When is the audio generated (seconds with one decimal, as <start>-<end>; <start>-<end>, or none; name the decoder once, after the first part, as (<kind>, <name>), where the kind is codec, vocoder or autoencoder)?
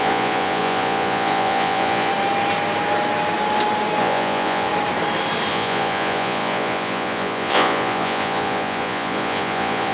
0.0-2.1 (vocoder, Vocos); 4.0-4.7; 5.5-9.9